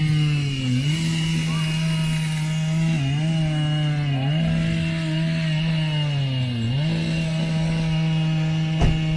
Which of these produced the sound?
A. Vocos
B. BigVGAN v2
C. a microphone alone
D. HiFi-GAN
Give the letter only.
C